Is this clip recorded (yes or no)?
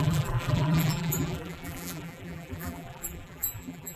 no